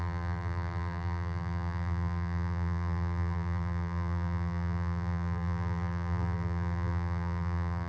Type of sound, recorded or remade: remade